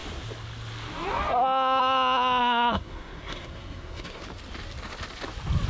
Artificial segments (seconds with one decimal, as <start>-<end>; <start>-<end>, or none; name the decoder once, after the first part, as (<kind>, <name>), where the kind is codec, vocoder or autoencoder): 2.4-4.2 (codec, SNAC)